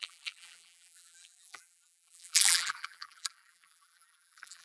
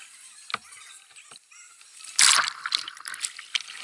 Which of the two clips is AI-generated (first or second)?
first